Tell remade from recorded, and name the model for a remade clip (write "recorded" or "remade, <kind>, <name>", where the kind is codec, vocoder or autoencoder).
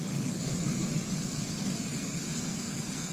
remade, codec, SNAC